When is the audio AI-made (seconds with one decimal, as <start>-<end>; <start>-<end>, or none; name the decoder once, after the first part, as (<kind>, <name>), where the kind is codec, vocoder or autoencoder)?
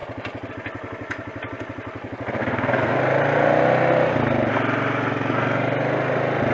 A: 2.4-3.0 (codec, SNAC)